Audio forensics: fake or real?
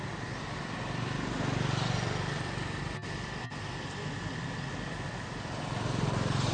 real